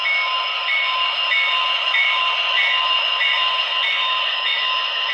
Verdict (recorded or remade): remade